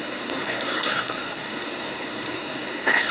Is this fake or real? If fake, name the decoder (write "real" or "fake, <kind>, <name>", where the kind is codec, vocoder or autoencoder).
fake, codec, SNAC